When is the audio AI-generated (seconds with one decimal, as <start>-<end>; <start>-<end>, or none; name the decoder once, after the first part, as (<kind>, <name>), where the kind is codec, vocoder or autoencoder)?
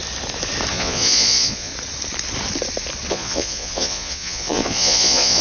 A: 0.7-1.7 (vocoder, Vocos); 3.1-5.4